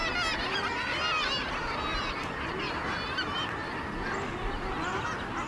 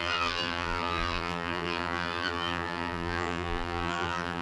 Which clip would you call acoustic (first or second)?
first